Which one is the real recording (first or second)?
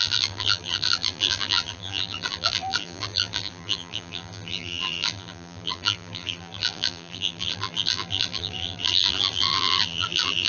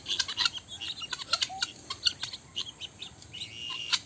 second